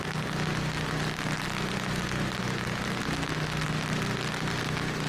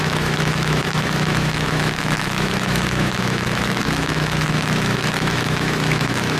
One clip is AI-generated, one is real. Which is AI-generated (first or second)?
second